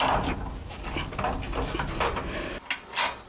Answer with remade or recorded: recorded